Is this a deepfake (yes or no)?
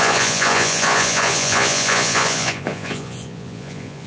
yes